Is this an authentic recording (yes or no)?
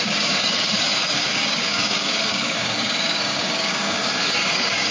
no